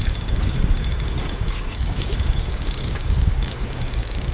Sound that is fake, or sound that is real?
fake